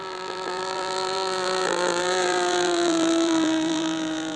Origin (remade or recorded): remade